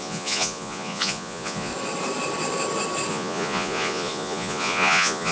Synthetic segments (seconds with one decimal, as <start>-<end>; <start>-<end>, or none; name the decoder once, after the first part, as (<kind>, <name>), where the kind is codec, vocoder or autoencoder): 0.0-1.7 (vocoder, Vocos); 3.1-5.3